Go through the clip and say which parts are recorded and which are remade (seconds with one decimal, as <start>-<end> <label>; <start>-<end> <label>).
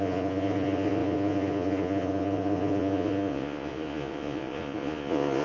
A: 0.0-5.4 remade